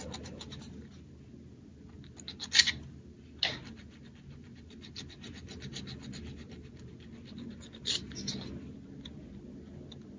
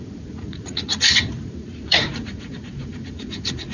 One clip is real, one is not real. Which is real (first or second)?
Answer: first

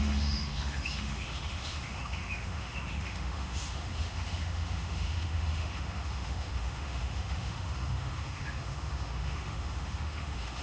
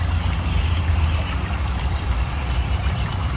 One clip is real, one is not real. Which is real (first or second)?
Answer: second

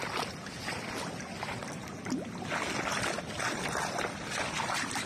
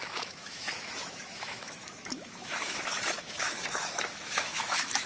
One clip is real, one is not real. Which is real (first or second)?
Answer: first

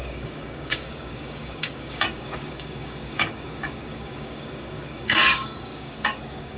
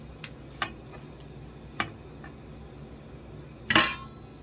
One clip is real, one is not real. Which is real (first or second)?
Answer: second